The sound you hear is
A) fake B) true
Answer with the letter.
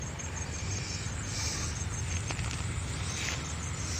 B